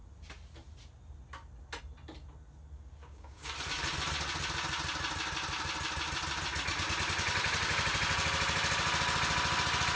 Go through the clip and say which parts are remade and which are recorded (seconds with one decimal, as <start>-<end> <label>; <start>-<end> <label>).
0.0-3.0 recorded; 3.0-3.5 remade; 3.5-10.0 recorded